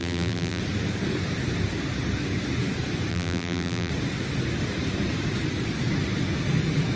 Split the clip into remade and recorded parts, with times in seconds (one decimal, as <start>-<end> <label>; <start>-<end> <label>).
0.0-0.6 remade; 0.6-3.1 recorded; 3.1-3.9 remade; 3.9-7.0 recorded

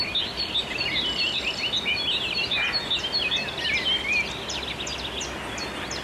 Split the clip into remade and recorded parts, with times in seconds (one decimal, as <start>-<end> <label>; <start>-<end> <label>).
0.0-6.0 recorded

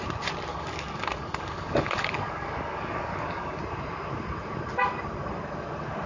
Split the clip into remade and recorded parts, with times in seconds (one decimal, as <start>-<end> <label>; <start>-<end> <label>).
0.0-0.5 recorded; 0.5-3.6 remade; 3.6-6.1 recorded

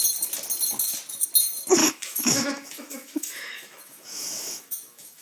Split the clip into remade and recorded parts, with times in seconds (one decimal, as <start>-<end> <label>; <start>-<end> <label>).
0.0-1.8 recorded; 1.8-5.2 remade

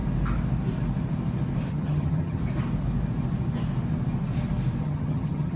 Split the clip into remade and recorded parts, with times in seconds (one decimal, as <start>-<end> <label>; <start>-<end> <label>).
0.0-1.7 recorded; 1.7-2.4 remade; 2.4-4.8 recorded; 4.8-5.6 remade

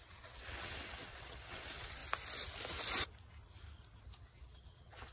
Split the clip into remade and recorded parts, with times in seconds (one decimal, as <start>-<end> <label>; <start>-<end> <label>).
0.0-2.0 remade; 2.0-4.0 recorded; 4.0-5.1 remade